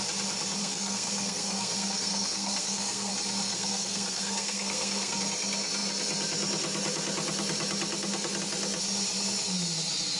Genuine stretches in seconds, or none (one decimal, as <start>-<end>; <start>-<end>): 0.0-0.6; 3.1-3.5; 5.2-10.2

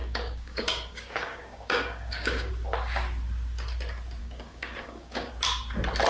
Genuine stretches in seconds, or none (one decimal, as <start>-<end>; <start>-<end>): 2.5-4.2; 5.3-6.1

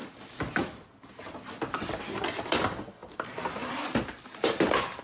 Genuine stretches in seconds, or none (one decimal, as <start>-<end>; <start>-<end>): 0.0-5.0

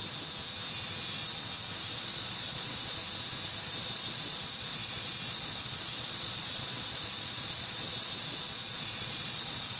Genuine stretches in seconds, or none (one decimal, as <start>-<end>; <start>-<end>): 0.0-1.9; 3.0-3.8

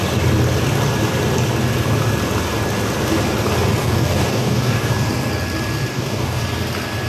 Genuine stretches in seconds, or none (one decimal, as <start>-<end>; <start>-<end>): 0.0-3.8; 4.9-5.9; 6.4-7.1

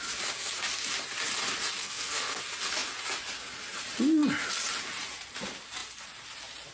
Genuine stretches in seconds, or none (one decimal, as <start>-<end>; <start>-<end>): 0.0-1.8; 2.4-6.7

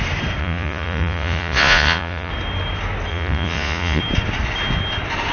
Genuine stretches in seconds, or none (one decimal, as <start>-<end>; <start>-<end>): 0.0-0.4; 2.3-3.1; 4.0-5.3